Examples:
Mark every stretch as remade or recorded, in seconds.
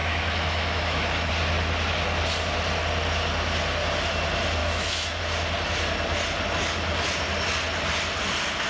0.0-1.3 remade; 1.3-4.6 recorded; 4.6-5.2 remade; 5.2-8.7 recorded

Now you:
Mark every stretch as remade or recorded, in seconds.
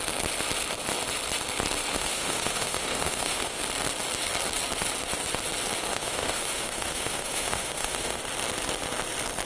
0.0-1.9 recorded; 1.9-3.6 remade; 3.6-5.9 recorded; 5.9-8.2 remade; 8.2-9.5 recorded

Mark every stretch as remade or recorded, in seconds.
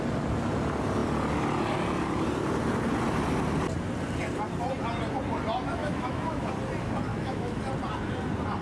0.0-5.8 recorded; 5.8-6.5 remade; 6.5-7.1 recorded; 7.1-7.6 remade; 7.6-8.6 recorded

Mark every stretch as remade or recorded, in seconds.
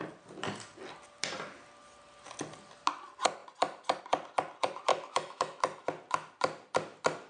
0.0-4.9 recorded; 4.9-5.6 remade; 5.6-7.3 recorded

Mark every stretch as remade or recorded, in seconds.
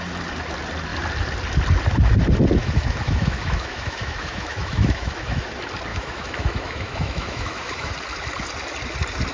0.0-2.6 recorded; 2.6-5.5 remade; 5.5-5.9 recorded; 5.9-7.9 remade; 7.9-9.3 recorded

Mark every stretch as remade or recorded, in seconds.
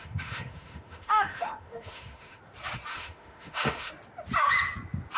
0.0-2.4 remade; 2.4-2.9 recorded; 2.9-3.9 remade; 3.9-5.2 recorded